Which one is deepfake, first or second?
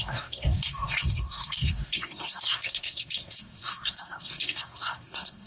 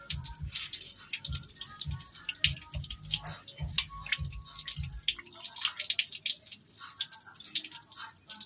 first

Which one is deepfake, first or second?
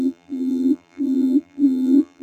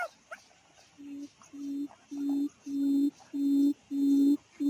first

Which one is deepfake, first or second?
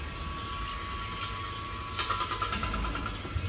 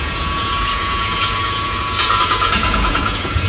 second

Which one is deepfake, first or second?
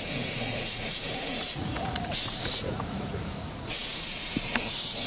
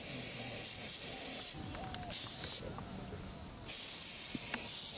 first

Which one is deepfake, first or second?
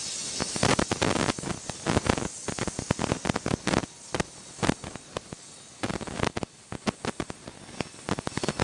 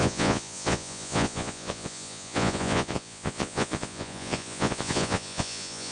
second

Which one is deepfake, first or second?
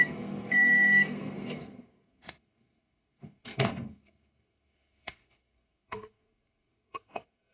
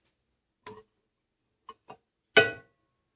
first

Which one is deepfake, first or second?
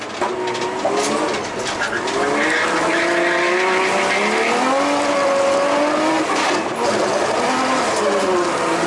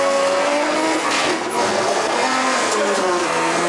second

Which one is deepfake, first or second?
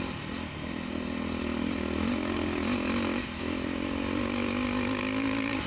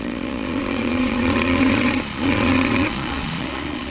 second